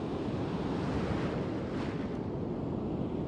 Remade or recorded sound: recorded